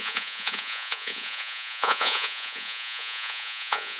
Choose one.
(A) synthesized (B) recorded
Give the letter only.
A